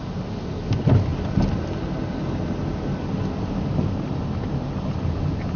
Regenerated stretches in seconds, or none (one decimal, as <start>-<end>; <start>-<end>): none